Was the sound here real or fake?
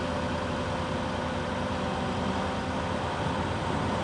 real